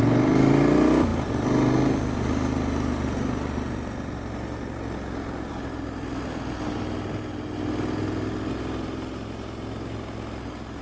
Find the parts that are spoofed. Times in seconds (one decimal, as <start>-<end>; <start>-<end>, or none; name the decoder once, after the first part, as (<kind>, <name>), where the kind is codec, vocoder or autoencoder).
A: none